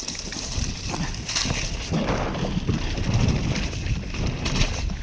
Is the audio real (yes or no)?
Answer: yes